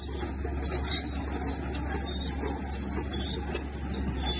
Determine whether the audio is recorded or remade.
recorded